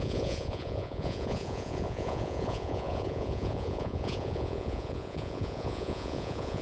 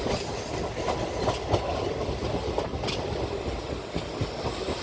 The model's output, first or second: first